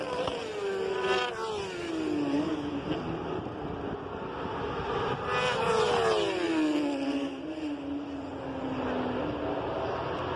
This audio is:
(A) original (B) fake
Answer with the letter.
A